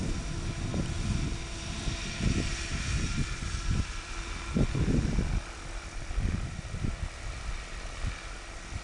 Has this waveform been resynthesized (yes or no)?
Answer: no